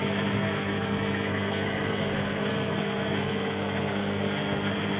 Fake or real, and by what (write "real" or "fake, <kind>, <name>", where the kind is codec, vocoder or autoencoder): fake, codec, SNAC